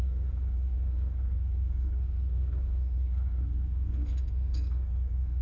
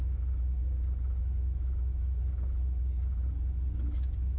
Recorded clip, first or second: second